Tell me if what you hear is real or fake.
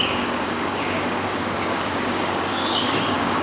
fake